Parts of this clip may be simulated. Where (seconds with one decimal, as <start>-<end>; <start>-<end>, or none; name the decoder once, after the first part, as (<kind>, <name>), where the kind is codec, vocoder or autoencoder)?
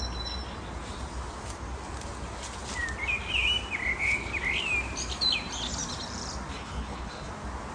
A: 6.5-7.3 (codec, HILCodec)